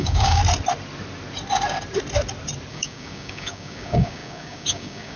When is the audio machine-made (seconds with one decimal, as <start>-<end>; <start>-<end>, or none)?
0.0-0.4; 2.7-5.2